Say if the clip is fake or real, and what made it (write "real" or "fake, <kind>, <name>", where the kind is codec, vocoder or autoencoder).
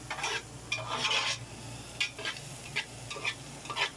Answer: real